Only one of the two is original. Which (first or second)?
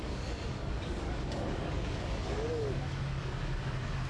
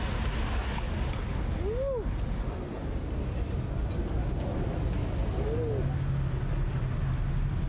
second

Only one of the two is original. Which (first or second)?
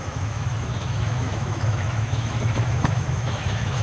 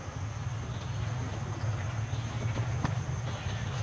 second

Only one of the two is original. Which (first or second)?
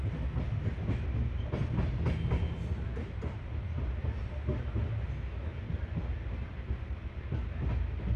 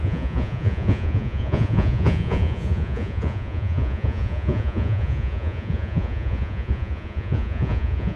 first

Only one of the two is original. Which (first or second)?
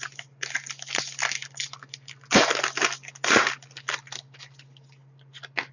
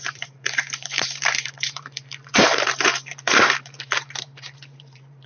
first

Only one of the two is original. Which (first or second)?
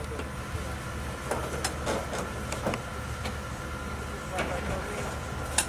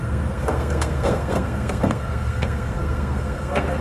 first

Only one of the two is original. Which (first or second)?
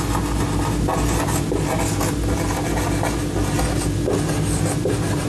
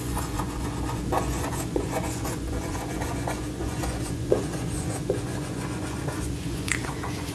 first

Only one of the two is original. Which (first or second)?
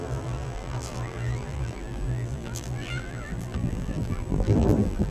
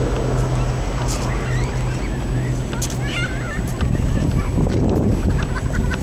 second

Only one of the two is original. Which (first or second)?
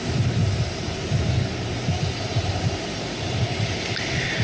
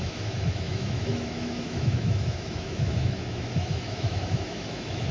first